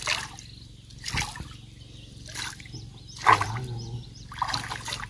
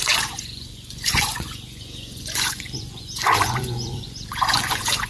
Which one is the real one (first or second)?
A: first